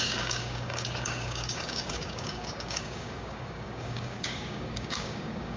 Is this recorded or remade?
remade